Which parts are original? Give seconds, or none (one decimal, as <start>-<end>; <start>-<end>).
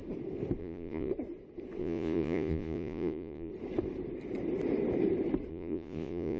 0.0-0.6; 1.1-1.8; 3.5-5.5